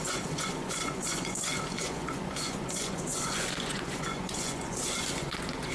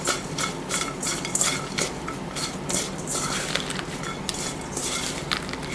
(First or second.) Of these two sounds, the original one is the second